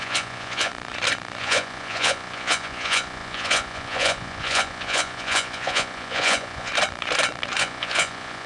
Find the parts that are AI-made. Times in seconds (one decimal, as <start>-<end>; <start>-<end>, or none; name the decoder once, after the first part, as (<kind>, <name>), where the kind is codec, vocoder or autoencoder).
0.0-0.7 (vocoder, Vocos); 1.4-6.7; 7.6-8.5